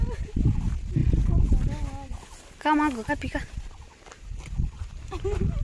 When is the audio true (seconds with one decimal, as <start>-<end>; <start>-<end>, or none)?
0.0-5.6